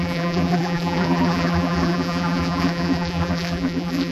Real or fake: fake